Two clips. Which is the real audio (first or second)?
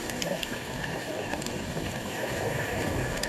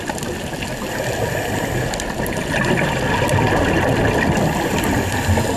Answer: second